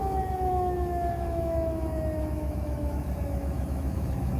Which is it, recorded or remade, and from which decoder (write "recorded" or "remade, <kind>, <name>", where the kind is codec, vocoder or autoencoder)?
remade, autoencoder, DAC-VAE